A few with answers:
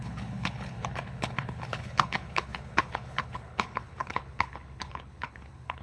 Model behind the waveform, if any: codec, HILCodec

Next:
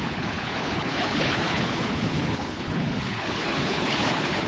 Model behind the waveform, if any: codec, HILCodec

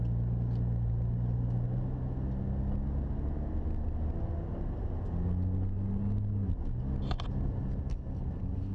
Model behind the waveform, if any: none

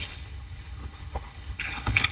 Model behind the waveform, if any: codec, HILCodec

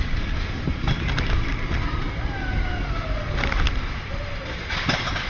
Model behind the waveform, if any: none